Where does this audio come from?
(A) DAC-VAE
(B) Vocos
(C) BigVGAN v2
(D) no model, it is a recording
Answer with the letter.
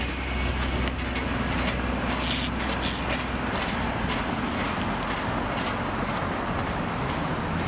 D